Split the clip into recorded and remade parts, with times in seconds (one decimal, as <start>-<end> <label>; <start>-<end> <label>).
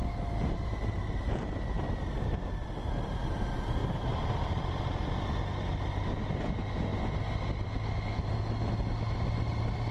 0.0-9.9 recorded